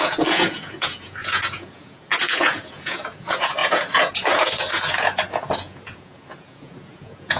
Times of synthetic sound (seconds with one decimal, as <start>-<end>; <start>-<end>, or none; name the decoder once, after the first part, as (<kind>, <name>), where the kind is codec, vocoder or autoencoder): 0.0-7.4 (vocoder, Vocos)